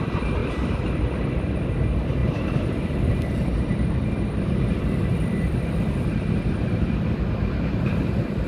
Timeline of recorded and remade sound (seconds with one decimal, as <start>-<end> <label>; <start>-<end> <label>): 0.0-0.4 recorded; 0.4-1.6 remade; 1.6-2.2 recorded; 2.2-7.2 remade; 7.2-8.5 recorded